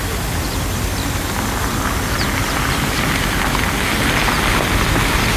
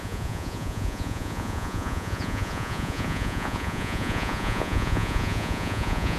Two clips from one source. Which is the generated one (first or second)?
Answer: second